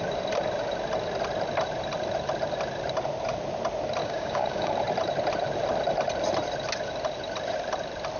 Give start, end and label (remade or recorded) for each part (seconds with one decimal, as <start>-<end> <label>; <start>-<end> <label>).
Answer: 0.0-4.0 recorded; 4.0-4.7 remade; 4.7-8.2 recorded